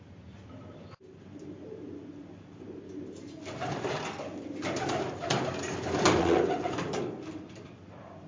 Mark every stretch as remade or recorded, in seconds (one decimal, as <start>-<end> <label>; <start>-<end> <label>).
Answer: 0.0-6.2 recorded; 6.2-6.7 remade; 6.7-8.3 recorded